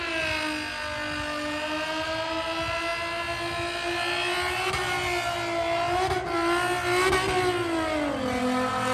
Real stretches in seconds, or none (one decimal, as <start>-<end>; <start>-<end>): 0.0-8.9